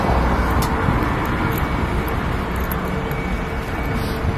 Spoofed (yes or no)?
no